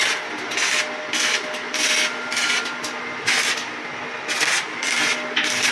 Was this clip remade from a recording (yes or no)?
no